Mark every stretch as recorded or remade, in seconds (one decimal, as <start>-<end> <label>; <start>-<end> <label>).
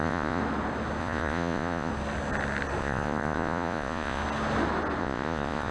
0.0-0.4 remade; 0.4-1.0 recorded; 1.0-1.9 remade; 1.9-2.8 recorded; 2.8-4.2 remade; 4.2-5.0 recorded; 5.0-5.7 remade